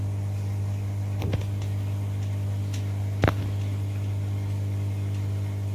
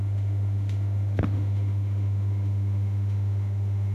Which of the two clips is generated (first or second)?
second